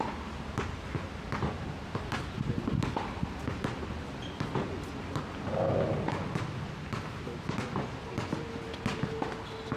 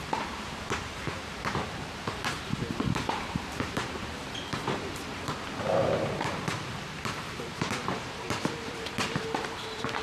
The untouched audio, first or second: first